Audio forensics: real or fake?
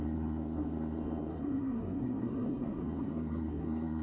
fake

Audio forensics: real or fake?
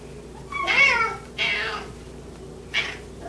real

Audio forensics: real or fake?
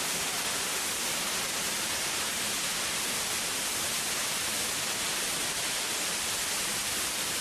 fake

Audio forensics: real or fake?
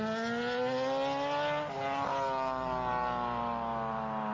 real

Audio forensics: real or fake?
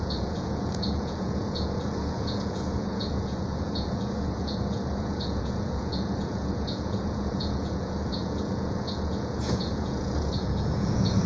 fake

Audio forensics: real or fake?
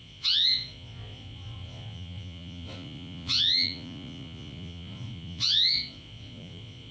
fake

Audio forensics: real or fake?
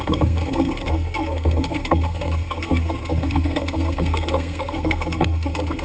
fake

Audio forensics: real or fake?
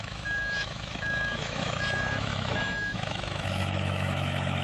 fake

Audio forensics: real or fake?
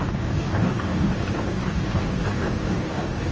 fake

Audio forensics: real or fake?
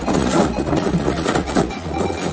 fake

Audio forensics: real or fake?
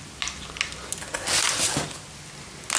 real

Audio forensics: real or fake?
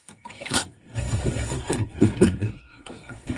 fake